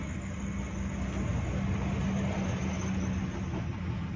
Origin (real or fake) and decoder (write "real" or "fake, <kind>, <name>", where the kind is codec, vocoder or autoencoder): real